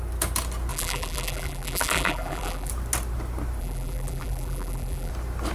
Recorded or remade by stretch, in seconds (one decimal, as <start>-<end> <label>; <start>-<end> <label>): 0.0-0.7 recorded; 0.7-2.7 remade; 2.7-3.6 recorded; 3.6-5.1 remade; 5.1-5.5 recorded

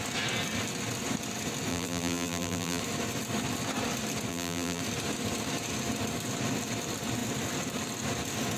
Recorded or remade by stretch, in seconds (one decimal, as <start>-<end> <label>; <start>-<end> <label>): 0.0-1.7 recorded; 1.7-2.8 remade; 2.8-4.3 recorded; 4.3-4.8 remade; 4.8-8.6 recorded

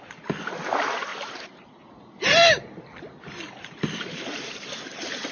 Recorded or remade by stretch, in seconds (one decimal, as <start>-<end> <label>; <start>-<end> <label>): 0.0-5.3 recorded

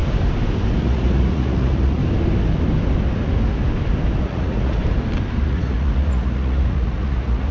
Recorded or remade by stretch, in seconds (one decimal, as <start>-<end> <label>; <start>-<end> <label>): 0.0-0.8 recorded; 0.8-2.0 remade; 2.0-4.2 recorded; 4.2-4.8 remade; 4.8-5.4 recorded; 5.4-7.5 remade

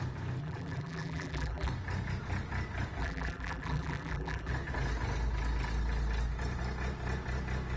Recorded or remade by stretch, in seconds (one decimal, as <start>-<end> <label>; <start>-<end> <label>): 0.0-0.4 recorded; 0.4-1.7 remade; 1.7-3.0 recorded; 3.0-4.5 remade; 4.5-7.8 recorded

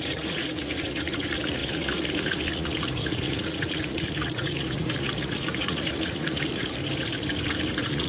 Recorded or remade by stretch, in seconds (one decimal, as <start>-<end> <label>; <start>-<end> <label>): 0.0-6.8 remade; 6.8-7.6 recorded; 7.6-8.1 remade